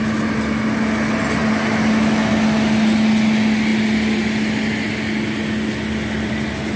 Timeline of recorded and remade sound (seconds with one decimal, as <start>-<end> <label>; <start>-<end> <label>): 0.0-6.8 recorded